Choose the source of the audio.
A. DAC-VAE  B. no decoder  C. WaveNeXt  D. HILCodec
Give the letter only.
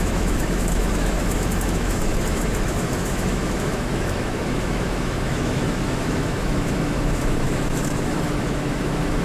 A